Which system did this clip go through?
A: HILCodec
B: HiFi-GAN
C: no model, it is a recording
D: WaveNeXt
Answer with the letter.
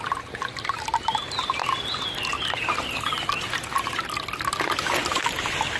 C